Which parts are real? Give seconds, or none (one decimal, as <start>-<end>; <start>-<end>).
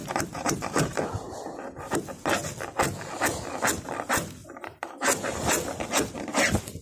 0.9-4.4; 5.5-6.8